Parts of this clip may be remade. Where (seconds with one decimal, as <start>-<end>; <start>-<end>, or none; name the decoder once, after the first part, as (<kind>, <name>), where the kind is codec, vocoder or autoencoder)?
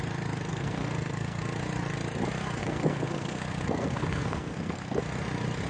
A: 0.5-1.4 (codec, SNAC); 2.6-5.0